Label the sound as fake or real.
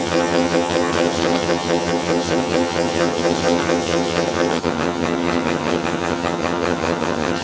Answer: fake